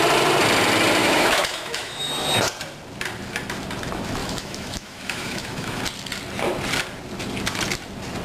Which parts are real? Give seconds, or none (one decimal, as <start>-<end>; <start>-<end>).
0.0-1.0; 2.1-4.2; 5.8-8.2